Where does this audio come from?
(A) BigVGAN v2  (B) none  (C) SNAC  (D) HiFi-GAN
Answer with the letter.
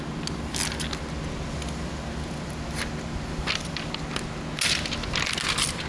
B